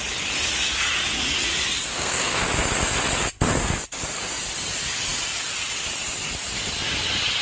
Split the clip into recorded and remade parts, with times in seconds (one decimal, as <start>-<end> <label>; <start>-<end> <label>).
0.0-1.9 recorded; 1.9-2.4 remade; 2.4-7.4 recorded

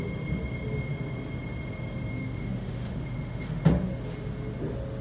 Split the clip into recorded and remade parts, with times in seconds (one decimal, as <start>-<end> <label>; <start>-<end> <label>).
0.0-2.2 recorded; 2.2-3.6 remade; 3.6-5.0 recorded